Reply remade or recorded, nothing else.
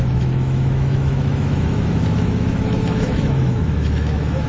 remade